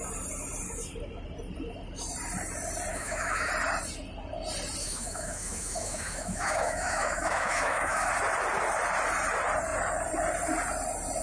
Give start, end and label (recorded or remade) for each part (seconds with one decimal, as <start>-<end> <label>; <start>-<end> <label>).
0.0-2.9 recorded; 2.9-3.5 remade; 3.5-4.8 recorded; 4.8-8.1 remade; 8.1-11.2 recorded